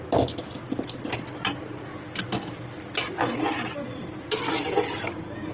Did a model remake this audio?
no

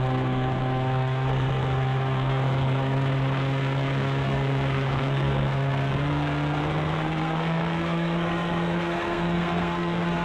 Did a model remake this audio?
yes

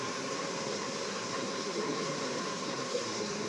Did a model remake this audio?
yes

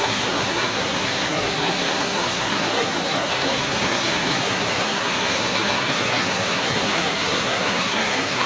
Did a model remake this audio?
yes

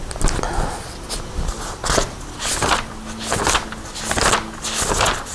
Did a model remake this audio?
no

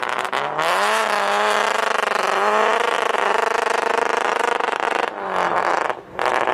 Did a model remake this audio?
no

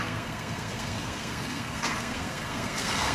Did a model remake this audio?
yes